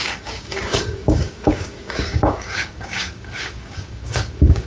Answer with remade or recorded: remade